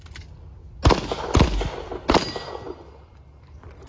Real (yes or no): yes